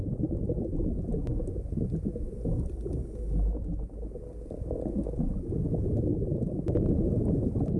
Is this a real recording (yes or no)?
yes